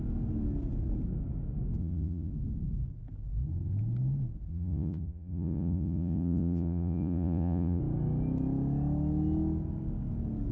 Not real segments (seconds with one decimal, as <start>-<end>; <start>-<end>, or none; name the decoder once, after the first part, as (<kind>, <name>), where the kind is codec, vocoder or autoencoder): 1.8-2.3 (vocoder, Vocos); 4.5-7.8

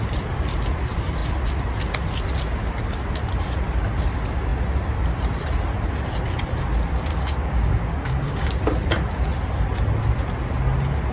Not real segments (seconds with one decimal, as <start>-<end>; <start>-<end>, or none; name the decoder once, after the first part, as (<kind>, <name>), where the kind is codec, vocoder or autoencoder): 7.1-8.5 (codec, DAC)

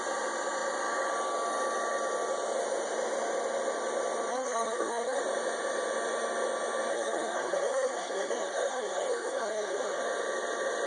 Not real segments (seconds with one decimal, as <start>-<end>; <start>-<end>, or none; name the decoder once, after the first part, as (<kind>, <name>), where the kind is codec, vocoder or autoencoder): 4.3-5.2 (codec, SNAC); 6.9-10.0

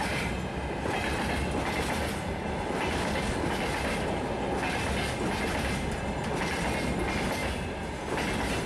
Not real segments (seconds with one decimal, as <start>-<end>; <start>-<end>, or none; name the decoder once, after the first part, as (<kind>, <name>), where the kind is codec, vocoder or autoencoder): none

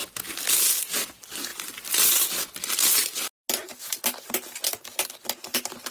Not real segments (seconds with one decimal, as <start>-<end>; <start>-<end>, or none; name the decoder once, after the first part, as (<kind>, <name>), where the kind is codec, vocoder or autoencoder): none

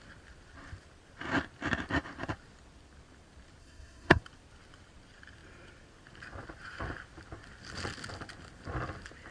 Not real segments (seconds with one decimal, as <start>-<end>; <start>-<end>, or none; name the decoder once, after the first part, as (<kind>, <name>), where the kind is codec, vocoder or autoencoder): 3.6-4.2 (codec, SNAC)

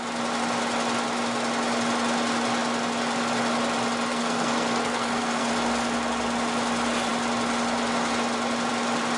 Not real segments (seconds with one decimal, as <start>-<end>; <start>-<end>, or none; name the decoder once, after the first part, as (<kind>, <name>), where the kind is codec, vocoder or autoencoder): 4.1-5.5 (codec, SNAC)